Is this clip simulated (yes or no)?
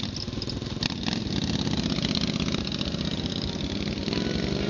no